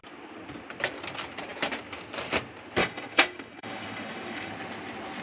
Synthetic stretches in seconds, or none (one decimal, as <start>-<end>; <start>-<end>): 2.8-4.5